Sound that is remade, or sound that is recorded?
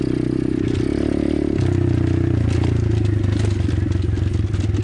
recorded